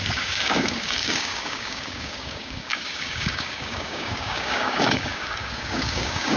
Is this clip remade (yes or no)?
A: yes